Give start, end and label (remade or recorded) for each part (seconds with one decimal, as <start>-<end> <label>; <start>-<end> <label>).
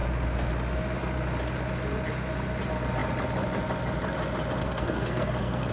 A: 0.0-4.6 recorded; 4.6-5.7 remade